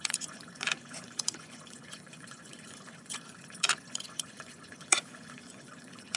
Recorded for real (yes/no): no